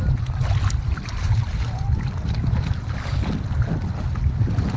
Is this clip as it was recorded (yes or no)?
yes